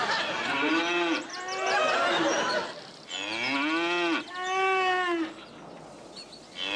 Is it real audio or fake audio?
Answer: real